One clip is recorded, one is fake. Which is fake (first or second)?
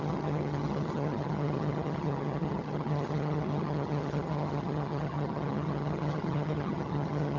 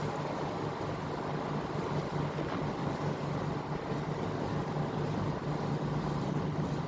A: first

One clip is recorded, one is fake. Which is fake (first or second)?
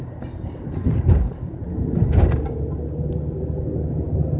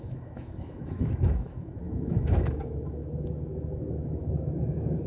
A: second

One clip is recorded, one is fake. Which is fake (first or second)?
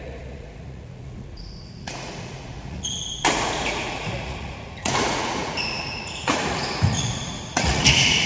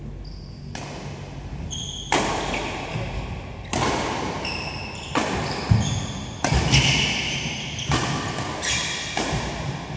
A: first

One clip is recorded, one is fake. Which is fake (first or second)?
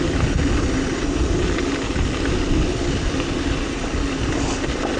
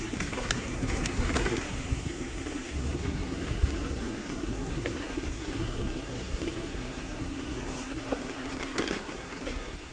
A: second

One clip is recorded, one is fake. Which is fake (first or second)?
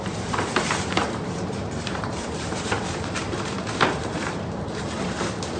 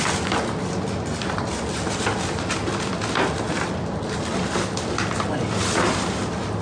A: first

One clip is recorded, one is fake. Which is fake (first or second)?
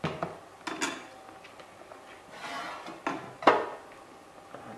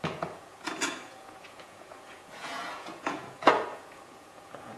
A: second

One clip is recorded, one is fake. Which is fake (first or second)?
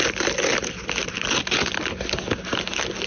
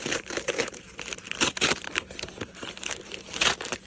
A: second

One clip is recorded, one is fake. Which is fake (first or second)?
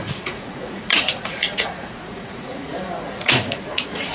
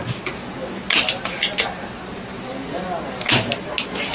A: first